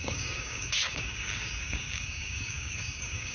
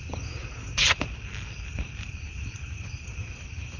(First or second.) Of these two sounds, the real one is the second